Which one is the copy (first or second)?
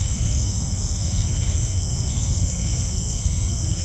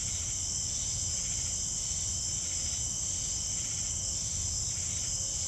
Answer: first